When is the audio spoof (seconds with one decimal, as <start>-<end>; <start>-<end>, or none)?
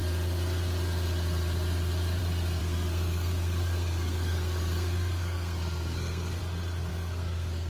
2.6-6.4; 6.9-7.7